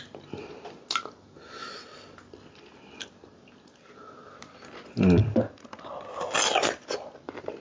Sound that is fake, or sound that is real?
real